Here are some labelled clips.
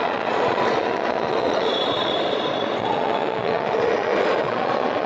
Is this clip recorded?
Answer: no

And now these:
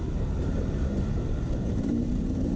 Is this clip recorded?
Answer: no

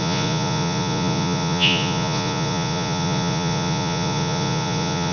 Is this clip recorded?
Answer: no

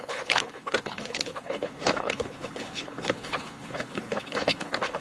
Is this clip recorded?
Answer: no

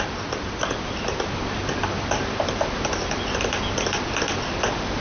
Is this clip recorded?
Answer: yes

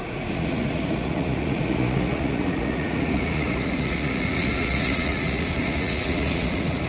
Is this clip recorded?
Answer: no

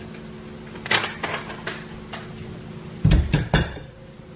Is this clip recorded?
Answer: yes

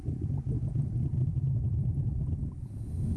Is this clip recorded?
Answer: yes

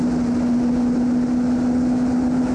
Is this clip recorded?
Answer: yes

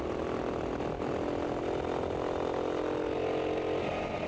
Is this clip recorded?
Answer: yes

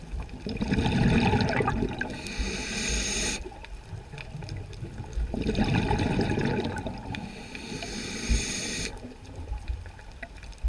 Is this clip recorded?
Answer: no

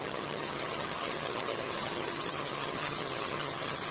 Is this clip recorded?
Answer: no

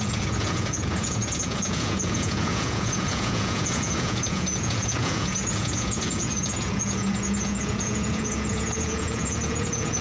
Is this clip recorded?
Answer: no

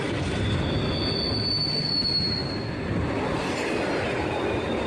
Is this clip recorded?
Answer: yes